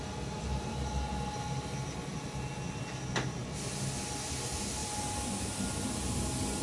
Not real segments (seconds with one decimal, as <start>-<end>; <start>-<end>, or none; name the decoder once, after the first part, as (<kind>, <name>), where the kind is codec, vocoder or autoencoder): none